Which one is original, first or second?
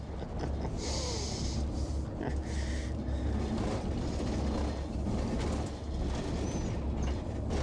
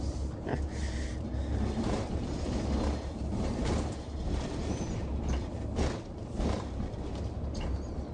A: first